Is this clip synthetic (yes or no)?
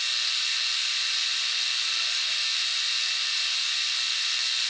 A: no